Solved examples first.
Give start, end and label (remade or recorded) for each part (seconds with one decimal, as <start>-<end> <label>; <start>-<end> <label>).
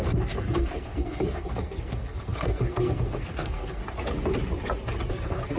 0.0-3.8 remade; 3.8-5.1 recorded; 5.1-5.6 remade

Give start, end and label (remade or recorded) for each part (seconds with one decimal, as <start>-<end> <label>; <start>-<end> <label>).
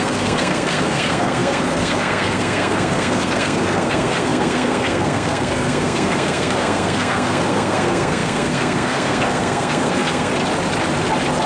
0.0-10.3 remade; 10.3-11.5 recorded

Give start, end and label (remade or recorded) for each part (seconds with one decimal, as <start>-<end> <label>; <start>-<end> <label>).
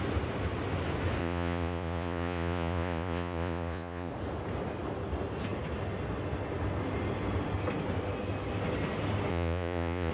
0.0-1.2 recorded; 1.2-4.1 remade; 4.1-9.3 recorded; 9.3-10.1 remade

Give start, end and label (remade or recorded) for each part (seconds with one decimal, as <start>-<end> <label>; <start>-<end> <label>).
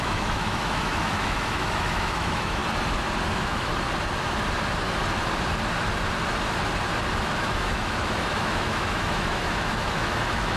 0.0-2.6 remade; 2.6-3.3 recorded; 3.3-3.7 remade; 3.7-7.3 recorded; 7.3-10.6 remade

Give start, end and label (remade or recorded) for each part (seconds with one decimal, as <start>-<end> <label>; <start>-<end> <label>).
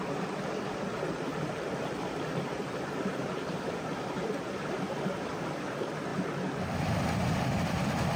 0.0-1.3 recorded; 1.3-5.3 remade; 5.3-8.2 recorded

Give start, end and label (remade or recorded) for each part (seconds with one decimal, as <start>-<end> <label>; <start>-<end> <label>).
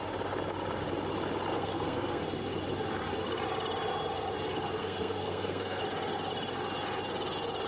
0.0-1.5 recorded; 1.5-2.2 remade; 2.2-4.8 recorded; 4.8-5.8 remade; 5.8-7.7 recorded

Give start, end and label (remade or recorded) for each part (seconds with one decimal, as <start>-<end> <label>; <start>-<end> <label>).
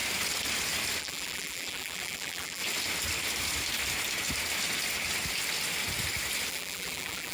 0.0-1.0 recorded; 1.0-2.6 remade; 2.6-6.5 recorded; 6.5-7.3 remade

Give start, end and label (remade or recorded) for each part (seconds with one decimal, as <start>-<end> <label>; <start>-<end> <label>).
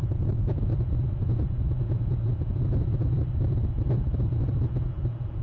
0.0-3.2 remade; 3.2-5.4 recorded